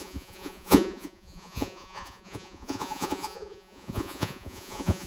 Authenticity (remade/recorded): remade